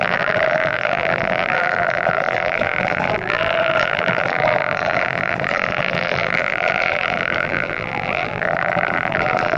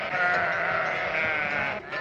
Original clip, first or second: second